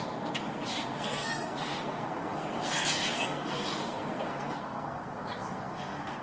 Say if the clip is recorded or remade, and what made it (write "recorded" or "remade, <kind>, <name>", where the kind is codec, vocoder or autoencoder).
remade, codec, SNAC